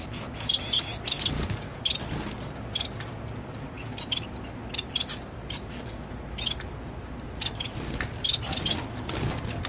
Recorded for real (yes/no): yes